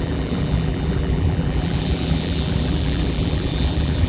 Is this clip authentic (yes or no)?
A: no